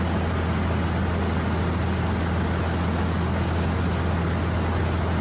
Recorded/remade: recorded